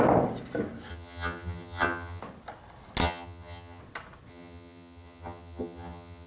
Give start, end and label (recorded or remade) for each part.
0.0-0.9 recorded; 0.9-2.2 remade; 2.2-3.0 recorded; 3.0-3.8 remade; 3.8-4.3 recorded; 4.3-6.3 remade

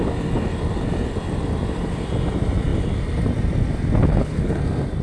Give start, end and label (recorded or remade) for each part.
0.0-4.1 recorded; 4.1-4.6 remade; 4.6-5.0 recorded

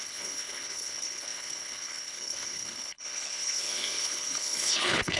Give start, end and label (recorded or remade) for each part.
0.0-5.2 remade

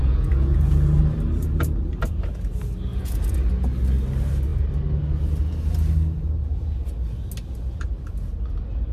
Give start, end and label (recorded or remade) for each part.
0.0-1.0 remade; 1.0-2.9 recorded; 2.9-3.5 remade; 3.5-8.9 recorded

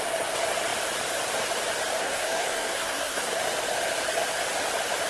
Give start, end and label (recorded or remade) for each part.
0.0-2.0 recorded; 2.0-3.4 remade; 3.4-5.1 recorded

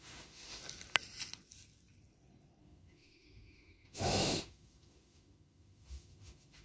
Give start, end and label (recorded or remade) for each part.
0.0-0.6 remade; 0.6-2.6 recorded; 2.6-6.6 remade

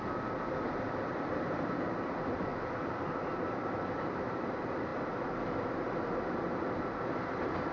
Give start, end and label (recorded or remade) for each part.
0.0-2.5 remade; 2.5-3.3 recorded; 3.3-7.7 remade